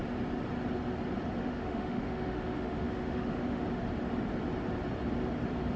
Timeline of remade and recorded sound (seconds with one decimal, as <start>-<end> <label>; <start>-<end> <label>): 0.0-1.4 recorded; 1.4-3.6 remade; 3.6-5.8 recorded